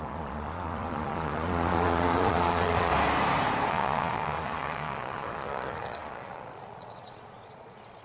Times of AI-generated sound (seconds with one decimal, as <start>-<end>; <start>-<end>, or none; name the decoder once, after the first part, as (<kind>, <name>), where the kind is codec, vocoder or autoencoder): 0.0-2.9 (vocoder, Vocos); 3.7-8.0